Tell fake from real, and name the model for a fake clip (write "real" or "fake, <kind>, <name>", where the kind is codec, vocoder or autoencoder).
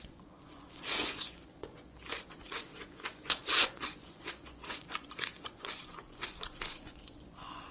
fake, vocoder, Vocos